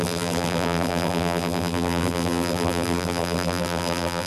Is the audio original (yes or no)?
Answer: no